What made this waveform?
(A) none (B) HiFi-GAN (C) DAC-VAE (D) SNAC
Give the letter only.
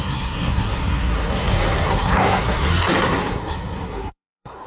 D